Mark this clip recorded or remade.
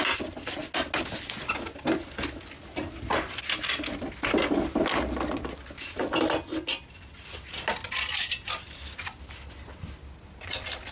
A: recorded